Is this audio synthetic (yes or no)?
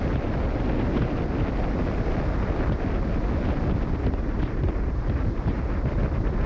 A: no